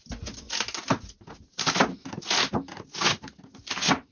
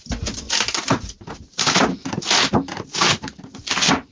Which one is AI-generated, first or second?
second